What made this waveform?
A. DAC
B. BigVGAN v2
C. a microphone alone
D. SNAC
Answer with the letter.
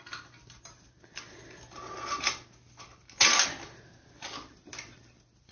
C